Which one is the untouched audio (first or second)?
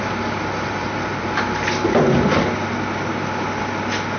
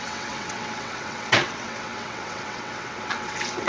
first